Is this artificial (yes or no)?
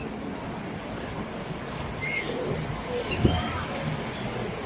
no